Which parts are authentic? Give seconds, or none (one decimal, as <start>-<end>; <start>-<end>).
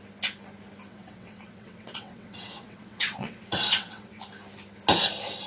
0.0-0.9; 4.2-5.5